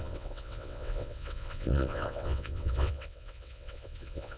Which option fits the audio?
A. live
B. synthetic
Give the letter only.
B